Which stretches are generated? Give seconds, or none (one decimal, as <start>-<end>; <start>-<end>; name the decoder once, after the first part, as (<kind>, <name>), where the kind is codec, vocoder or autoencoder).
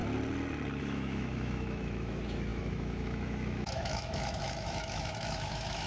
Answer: 0.8-5.9 (autoencoder, DAC-VAE)